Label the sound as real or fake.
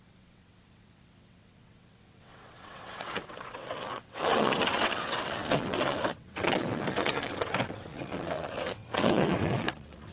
fake